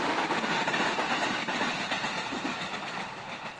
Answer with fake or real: real